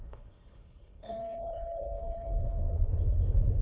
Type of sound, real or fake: fake